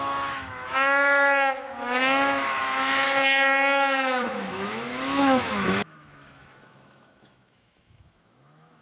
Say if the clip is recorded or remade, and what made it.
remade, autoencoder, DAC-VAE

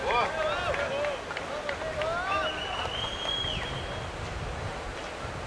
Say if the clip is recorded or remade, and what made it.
recorded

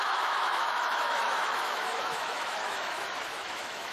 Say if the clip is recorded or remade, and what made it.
remade, autoencoder, DAC-VAE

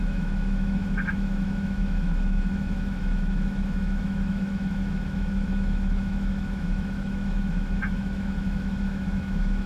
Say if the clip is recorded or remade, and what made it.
remade, autoencoder, DAC-VAE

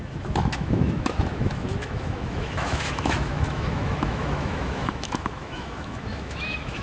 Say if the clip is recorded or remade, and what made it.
remade, autoencoder, DAC-VAE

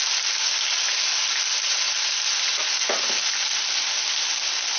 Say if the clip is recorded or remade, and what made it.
recorded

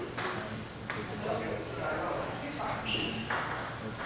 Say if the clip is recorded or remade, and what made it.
recorded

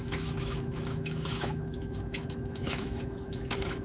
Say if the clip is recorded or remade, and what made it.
remade, autoencoder, DAC-VAE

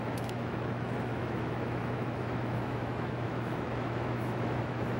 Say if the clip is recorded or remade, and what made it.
remade, autoencoder, DAC-VAE